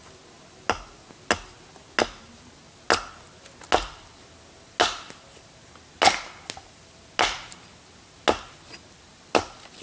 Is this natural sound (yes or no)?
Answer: yes